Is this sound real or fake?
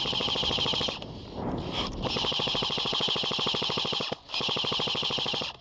fake